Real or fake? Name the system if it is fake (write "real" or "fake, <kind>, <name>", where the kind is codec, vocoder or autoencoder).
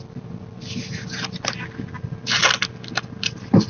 real